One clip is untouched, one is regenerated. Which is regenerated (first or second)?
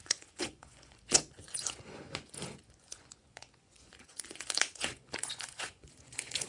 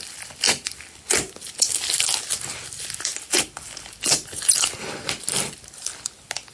first